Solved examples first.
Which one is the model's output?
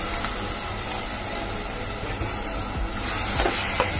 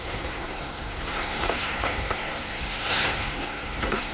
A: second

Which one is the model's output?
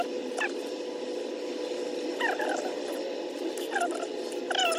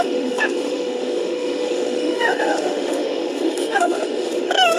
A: second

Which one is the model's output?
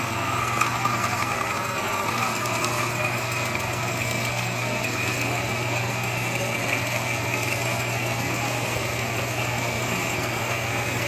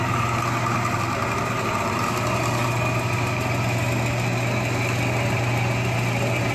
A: first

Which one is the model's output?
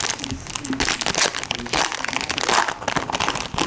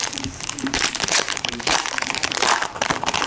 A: second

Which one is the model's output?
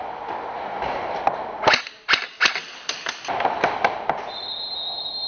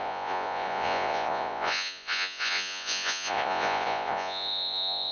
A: second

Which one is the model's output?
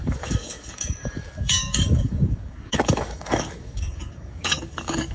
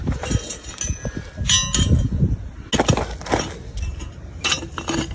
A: first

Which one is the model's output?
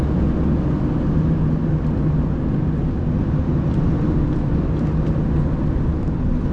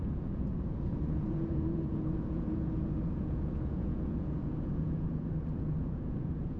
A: second